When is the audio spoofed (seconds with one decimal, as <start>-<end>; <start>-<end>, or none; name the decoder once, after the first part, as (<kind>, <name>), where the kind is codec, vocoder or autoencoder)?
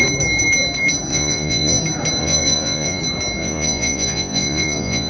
1.1-1.8 (vocoder, Vocos); 2.2-3.0; 3.4-5.1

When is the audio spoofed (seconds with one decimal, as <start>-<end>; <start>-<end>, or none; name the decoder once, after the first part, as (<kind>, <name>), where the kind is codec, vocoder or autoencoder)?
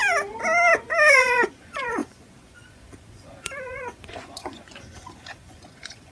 1.1-6.1 (vocoder, Vocos)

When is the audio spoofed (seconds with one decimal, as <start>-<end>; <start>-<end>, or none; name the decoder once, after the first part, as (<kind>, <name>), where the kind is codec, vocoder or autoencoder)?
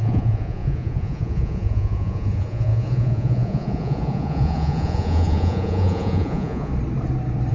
0.0-6.7 (vocoder, Vocos)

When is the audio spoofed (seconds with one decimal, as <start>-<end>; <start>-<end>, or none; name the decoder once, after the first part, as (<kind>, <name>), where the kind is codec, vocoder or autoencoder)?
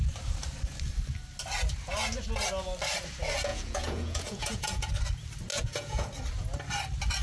3.5-4.9 (vocoder, Vocos); 5.5-6.1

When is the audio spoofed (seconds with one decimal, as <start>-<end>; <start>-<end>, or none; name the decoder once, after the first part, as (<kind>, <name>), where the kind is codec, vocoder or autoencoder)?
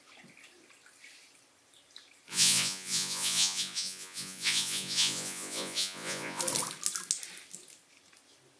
2.3-6.4 (vocoder, Vocos)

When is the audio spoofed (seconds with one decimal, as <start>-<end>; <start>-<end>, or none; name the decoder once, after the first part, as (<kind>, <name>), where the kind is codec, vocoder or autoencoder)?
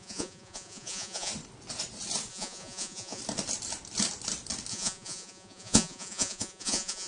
0.0-1.3 (vocoder, Vocos); 2.3-3.2; 4.7-7.1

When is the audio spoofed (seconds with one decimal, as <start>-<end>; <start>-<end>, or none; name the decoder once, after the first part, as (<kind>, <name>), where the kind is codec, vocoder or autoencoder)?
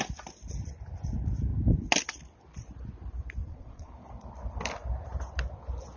3.4-3.9 (vocoder, Vocos)